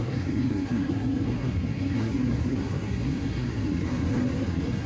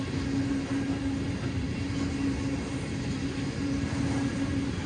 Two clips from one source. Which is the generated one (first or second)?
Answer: first